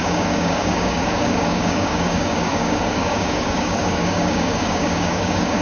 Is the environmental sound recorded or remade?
remade